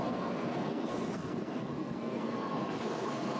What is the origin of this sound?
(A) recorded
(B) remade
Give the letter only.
B